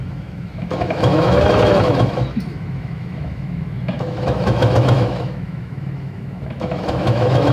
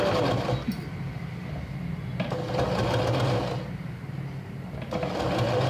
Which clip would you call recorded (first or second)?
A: second